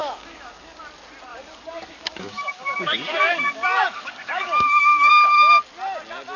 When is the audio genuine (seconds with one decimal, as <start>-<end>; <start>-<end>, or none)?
0.8-1.3; 5.1-6.4